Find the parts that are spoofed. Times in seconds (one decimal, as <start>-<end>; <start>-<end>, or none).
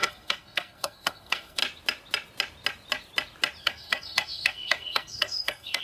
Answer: 0.0-1.6; 3.6-5.8